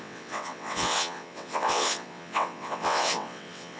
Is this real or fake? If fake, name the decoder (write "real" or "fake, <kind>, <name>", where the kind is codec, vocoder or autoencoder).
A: fake, vocoder, WaveNeXt